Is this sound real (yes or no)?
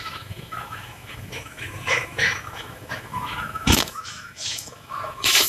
no